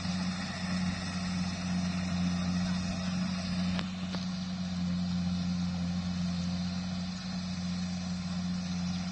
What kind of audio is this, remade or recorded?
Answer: recorded